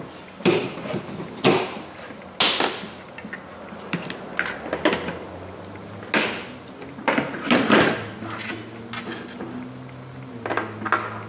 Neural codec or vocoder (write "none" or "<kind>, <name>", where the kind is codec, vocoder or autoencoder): none